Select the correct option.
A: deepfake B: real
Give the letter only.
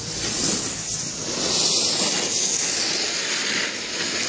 B